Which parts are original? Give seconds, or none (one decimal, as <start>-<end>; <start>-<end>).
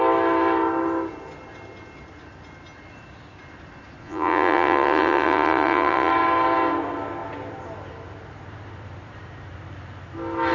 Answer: 0.0-4.0; 6.1-10.5